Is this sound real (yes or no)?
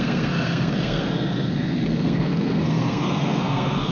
no